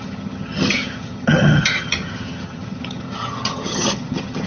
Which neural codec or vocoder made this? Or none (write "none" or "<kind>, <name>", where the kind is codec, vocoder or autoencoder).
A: vocoder, HiFi-GAN